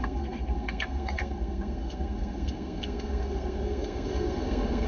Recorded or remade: remade